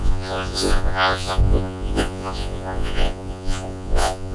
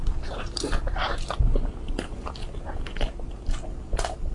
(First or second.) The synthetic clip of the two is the first